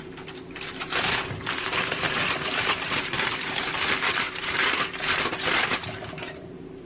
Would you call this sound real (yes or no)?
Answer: no